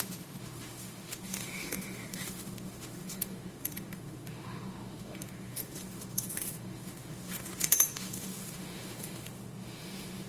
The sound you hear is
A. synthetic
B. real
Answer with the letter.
A